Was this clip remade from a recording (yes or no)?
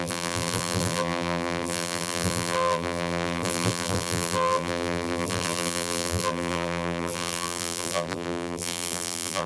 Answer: yes